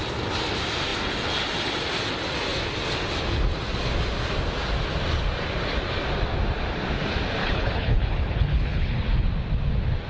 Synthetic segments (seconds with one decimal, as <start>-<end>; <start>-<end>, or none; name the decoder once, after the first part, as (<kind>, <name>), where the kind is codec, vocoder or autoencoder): 7.4-9.0 (codec, HILCodec)